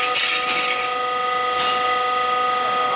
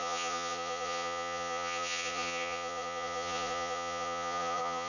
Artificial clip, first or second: second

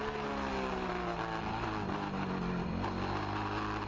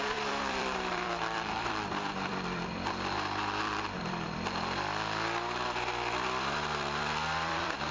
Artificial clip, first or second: second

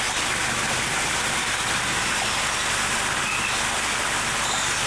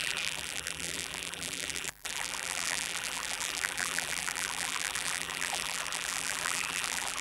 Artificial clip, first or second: second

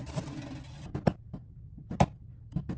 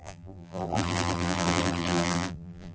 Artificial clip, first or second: second